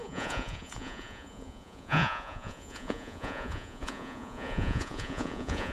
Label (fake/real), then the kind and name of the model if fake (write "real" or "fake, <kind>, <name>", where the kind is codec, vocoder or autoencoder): fake, vocoder, Vocos